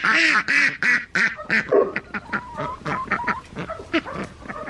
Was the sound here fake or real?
fake